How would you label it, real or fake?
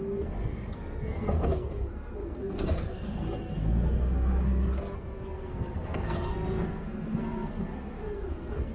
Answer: fake